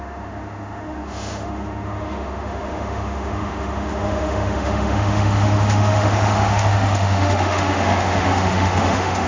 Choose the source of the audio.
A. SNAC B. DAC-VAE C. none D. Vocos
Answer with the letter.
B